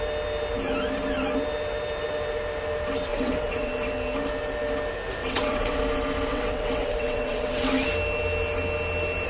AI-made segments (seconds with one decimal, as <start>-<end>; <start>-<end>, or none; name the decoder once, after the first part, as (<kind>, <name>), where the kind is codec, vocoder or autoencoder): 3.1-3.7 (vocoder, WaveNeXt); 5.2-5.8; 6.3-7.7